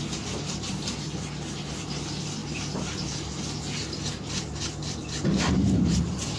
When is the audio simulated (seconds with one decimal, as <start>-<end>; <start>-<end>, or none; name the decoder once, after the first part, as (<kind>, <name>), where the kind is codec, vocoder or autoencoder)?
none